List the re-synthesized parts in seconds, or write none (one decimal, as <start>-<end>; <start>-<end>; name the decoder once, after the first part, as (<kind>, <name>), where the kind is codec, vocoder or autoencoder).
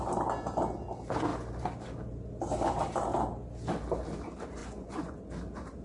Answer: 4.6-5.2 (vocoder, Vocos)